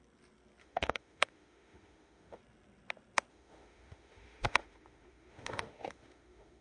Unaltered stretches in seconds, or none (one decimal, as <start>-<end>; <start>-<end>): 0.0-0.6; 2.4-3.3